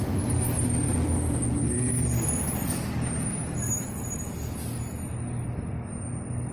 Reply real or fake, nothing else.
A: real